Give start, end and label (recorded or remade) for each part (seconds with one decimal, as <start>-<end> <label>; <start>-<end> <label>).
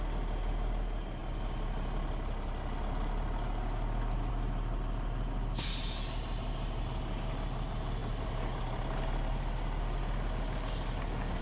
0.0-11.4 recorded